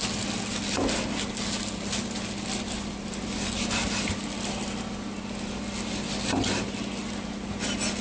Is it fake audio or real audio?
real